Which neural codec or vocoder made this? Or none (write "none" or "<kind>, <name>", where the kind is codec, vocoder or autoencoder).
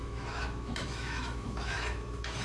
autoencoder, DAC-VAE